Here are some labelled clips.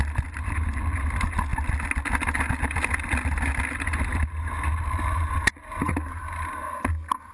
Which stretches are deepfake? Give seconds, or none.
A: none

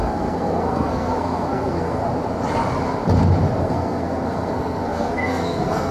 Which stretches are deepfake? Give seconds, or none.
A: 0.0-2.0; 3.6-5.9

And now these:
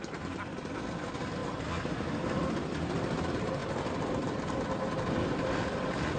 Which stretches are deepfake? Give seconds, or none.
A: 0.0-6.2